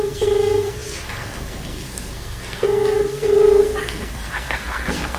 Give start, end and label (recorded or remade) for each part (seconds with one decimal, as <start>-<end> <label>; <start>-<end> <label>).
0.0-5.2 remade